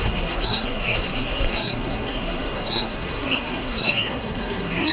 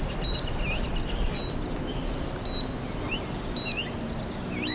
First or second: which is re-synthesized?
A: first